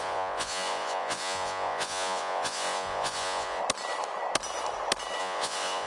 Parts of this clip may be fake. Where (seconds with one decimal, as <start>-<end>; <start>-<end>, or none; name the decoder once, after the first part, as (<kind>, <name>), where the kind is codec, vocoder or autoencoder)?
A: 0.0-3.6 (vocoder, Vocos); 5.2-5.9